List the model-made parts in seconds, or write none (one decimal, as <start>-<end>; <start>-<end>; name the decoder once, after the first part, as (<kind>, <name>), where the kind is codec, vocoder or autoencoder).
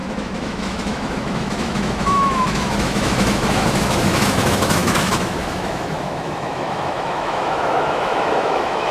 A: 0.0-8.9 (autoencoder, DAC-VAE)